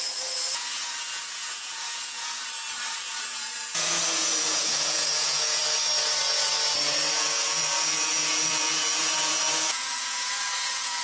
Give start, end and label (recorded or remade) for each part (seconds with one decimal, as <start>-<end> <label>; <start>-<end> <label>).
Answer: 0.0-2.4 remade; 2.4-3.1 recorded; 3.1-5.6 remade; 5.6-7.1 recorded; 7.1-11.0 remade